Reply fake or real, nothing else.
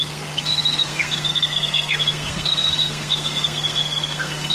fake